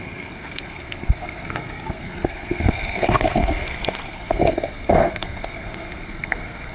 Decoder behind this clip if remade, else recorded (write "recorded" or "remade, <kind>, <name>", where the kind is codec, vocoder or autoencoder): remade, codec, SNAC